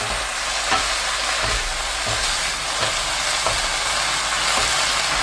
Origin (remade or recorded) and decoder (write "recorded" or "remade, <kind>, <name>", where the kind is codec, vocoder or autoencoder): recorded